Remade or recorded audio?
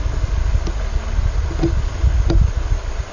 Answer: recorded